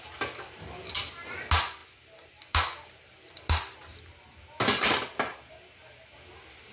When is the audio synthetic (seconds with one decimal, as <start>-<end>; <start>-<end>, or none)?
none